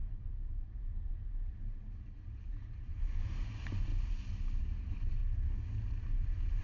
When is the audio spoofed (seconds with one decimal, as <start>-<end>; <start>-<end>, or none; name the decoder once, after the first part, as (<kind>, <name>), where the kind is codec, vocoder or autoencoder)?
0.0-3.9 (vocoder, BigVGAN v2); 4.6-5.2; 6.1-6.6